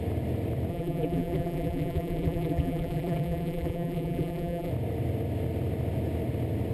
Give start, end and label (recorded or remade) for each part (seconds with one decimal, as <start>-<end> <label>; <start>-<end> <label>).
0.0-0.7 recorded; 0.7-4.7 remade; 4.7-6.7 recorded